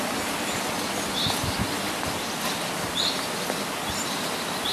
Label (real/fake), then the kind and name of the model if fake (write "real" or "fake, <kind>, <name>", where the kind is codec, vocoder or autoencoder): real